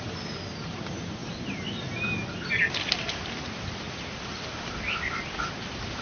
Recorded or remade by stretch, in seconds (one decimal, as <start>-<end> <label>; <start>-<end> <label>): 0.0-6.0 recorded